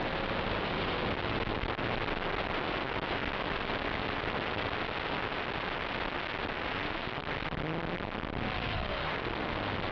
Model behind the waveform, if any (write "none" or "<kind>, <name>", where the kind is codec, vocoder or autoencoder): none